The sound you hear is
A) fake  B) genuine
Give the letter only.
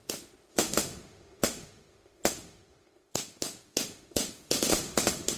A